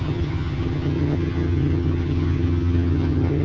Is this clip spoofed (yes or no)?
yes